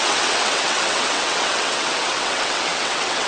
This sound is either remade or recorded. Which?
remade